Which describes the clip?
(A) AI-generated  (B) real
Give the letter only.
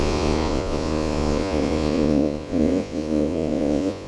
A